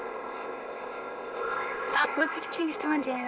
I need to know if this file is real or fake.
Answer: fake